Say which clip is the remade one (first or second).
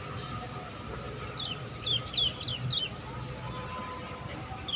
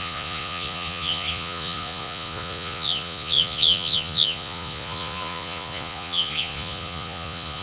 second